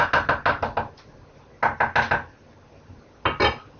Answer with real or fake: real